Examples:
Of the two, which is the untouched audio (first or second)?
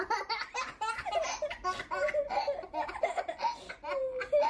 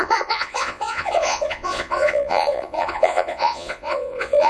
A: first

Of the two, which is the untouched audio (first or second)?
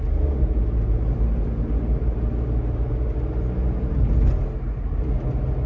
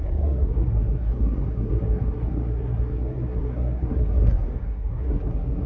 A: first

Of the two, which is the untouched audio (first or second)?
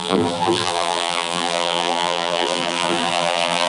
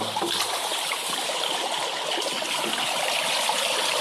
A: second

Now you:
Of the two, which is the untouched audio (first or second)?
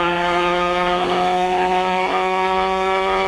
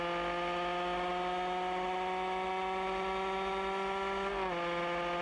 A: second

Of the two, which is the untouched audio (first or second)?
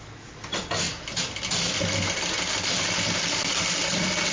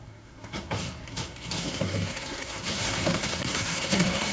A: first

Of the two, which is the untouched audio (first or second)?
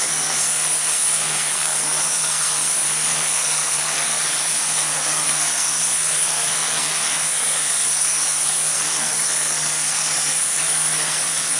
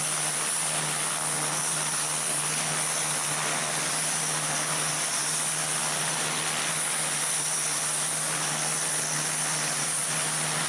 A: second